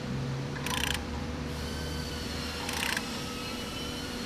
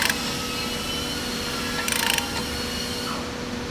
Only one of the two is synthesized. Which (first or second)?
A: first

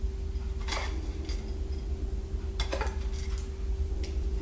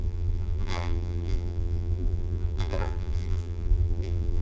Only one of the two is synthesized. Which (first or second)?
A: second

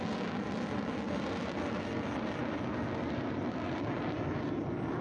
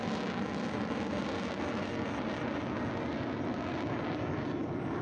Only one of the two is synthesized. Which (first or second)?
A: first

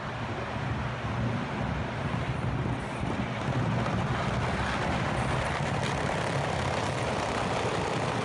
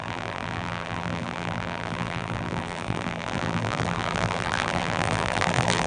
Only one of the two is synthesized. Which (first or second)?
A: second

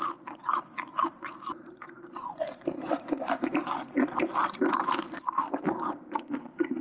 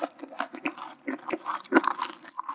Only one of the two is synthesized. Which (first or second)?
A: first